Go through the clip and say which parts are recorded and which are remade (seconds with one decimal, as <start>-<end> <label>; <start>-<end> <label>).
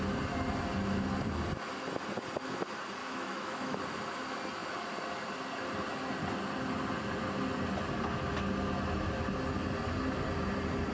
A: 0.0-3.0 recorded; 3.0-3.8 remade; 3.8-10.9 recorded